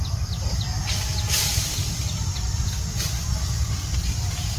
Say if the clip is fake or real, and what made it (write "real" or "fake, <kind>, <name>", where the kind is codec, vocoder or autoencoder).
real